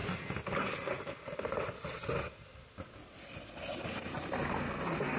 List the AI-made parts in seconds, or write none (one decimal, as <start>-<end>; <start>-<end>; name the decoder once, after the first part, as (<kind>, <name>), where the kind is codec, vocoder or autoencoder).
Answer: none